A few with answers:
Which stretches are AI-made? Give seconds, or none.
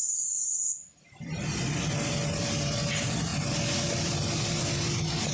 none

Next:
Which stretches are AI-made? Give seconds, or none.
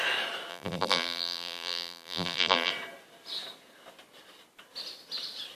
0.5-2.7 (vocoder, BigVGAN v2)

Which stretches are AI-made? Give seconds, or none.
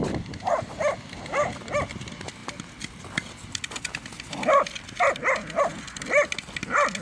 none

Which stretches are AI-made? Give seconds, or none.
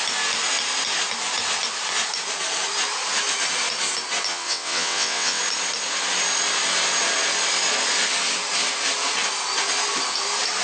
4.3-5.4 (vocoder, WaveNeXt)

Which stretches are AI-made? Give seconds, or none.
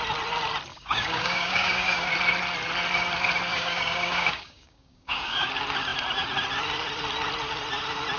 0.7-2.1 (codec, DAC); 3.5-5.5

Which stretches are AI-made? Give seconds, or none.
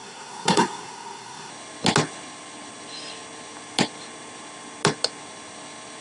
0.0-1.5 (codec, SNAC)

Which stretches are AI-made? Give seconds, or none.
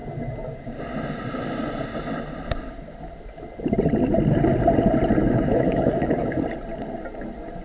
5.2-6.4 (autoencoder, DAC-VAE)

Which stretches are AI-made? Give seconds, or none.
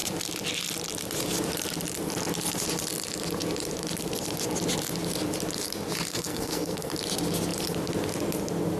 6.1-6.9 (codec, SNAC)